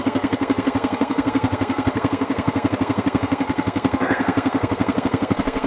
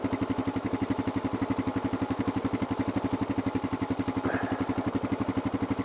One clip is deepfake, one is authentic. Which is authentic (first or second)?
second